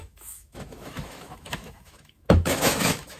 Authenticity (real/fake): fake